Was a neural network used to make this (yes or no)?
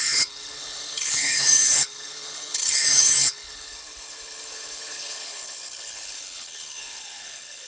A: yes